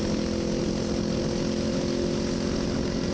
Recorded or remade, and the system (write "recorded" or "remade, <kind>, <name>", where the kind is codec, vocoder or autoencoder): recorded